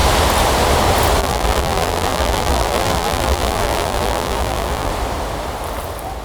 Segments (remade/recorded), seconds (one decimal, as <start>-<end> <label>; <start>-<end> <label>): 0.0-1.2 recorded; 1.2-4.9 remade; 4.9-6.2 recorded